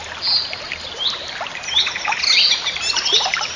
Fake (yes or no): no